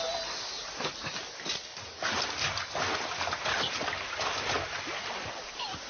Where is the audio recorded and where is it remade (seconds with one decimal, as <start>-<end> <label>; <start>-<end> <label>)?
0.0-5.9 recorded